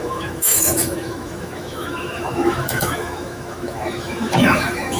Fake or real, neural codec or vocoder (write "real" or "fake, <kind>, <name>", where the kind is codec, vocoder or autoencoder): fake, autoencoder, DAC-VAE